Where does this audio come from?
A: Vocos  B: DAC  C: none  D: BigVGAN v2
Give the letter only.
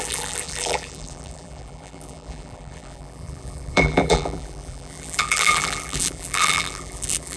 D